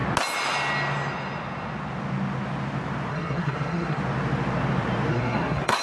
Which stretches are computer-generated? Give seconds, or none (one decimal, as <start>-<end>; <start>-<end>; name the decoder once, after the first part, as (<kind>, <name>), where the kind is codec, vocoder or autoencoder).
3.1-4.0 (codec, SNAC); 5.1-5.8